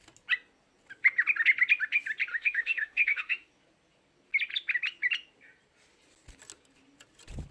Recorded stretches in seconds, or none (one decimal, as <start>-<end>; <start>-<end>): 0.0-2.3; 3.5-7.5